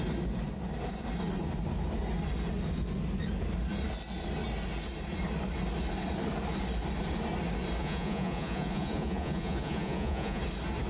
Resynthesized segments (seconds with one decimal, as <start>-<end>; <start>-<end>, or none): 7.8-10.4